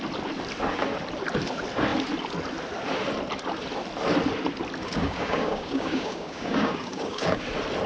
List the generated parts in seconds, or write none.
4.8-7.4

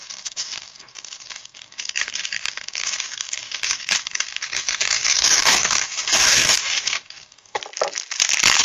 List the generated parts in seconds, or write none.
0.0-7.6

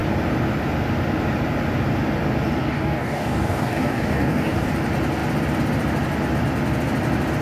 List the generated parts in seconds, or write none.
2.6-4.7

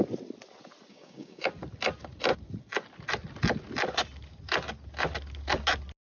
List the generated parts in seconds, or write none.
0.9-1.5

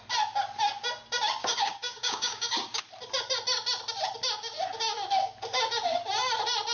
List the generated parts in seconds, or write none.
1.4-2.8

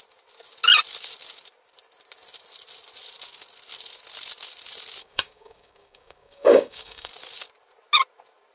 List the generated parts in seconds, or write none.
5.0-7.1